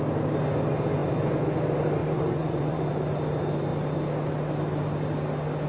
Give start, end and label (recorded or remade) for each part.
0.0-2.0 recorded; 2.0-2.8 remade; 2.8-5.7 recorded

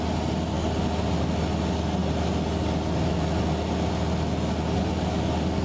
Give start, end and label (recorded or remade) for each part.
0.0-5.6 recorded

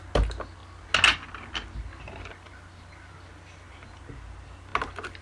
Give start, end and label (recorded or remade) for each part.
0.0-5.2 recorded

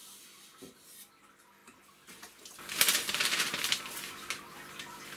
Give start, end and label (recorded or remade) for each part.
0.0-5.2 recorded

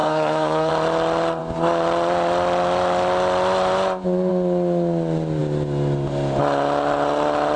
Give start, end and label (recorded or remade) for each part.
0.0-0.7 remade; 0.7-7.6 recorded

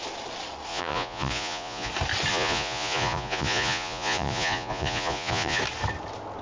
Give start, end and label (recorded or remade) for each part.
0.0-0.7 recorded; 0.7-1.9 remade; 1.9-2.3 recorded; 2.3-5.6 remade; 5.6-6.4 recorded